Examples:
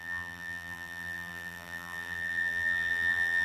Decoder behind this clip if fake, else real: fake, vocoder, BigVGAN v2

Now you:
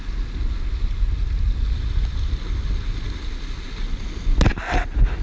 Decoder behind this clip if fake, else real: real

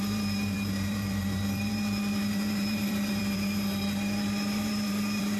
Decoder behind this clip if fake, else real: fake, vocoder, BigVGAN v2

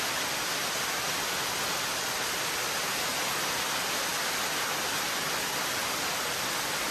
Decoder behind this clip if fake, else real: real